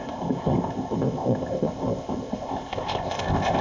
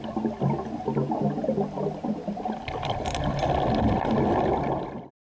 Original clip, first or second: second